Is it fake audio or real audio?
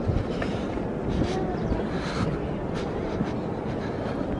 real